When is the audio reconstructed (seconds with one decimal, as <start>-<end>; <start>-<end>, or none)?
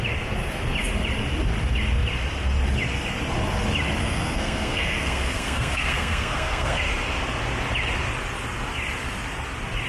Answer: 4.0-6.8